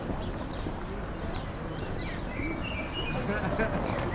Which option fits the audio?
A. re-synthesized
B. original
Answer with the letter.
B